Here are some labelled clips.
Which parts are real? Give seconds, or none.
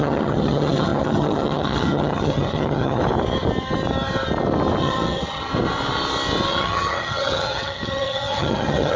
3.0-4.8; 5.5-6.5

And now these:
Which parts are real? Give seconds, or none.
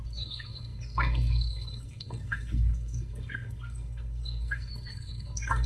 none